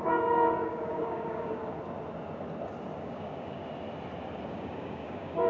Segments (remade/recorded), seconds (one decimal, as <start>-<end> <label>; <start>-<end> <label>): 0.0-1.6 remade; 1.6-3.0 recorded; 3.0-3.6 remade; 3.6-4.5 recorded; 4.5-5.5 remade